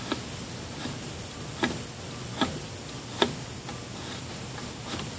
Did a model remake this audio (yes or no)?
no